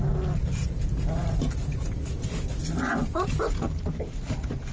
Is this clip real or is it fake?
real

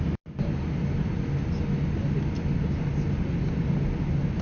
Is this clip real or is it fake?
real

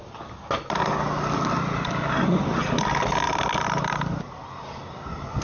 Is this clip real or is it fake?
real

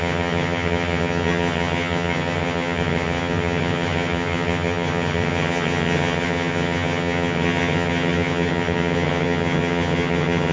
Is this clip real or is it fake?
fake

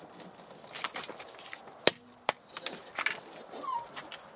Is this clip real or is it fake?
real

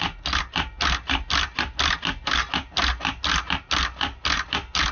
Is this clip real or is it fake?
real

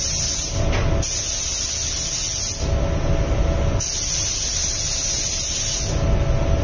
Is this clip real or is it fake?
real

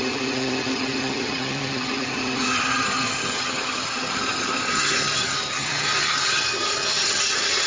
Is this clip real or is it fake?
fake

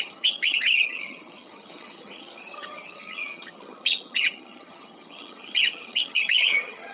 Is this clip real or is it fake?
fake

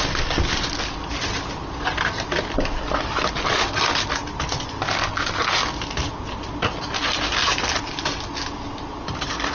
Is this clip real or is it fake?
real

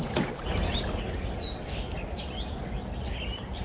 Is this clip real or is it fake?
real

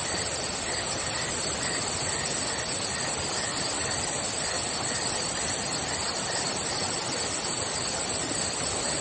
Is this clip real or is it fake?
real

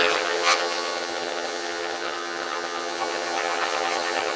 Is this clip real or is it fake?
fake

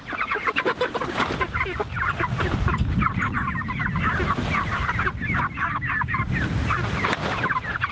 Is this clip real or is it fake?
real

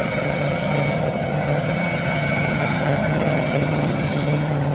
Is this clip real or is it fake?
fake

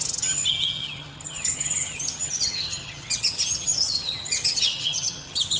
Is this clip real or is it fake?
fake